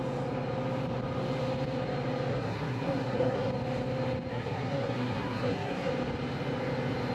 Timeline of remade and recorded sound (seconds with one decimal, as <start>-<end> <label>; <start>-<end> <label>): 0.0-2.3 recorded; 2.3-3.5 remade; 3.5-4.3 recorded; 4.3-5.9 remade; 5.9-7.1 recorded